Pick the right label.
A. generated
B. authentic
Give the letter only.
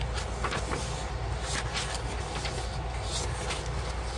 B